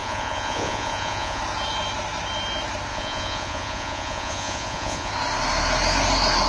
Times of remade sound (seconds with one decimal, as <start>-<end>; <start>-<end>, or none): 0.0-1.4; 2.9-5.1

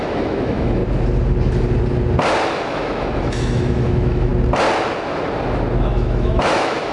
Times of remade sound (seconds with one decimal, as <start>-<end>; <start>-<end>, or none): 0.0-0.8; 2.5-4.3; 5.9-6.9

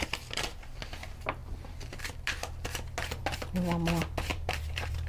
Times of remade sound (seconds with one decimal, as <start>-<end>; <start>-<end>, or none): 4.3-5.1

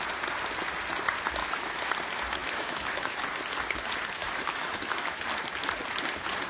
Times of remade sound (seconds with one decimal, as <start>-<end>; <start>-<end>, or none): 1.4-1.9; 2.4-3.2; 4.2-5.2